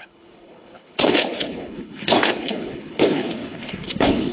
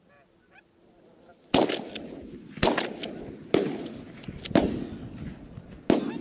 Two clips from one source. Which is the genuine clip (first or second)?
second